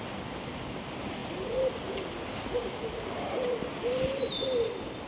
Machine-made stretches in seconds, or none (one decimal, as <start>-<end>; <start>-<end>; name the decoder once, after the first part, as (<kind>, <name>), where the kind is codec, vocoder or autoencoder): none